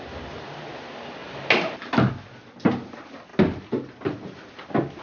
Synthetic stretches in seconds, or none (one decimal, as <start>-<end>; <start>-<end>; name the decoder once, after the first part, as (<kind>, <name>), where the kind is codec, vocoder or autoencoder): none